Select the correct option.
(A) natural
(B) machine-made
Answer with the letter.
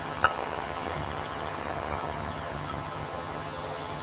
B